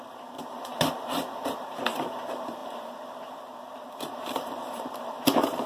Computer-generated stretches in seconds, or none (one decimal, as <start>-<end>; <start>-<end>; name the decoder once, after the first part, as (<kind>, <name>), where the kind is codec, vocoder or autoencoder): 0.0-0.7 (vocoder, BigVGAN v2); 1.6-5.7